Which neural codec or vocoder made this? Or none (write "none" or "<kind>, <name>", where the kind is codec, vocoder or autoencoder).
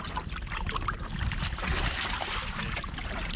none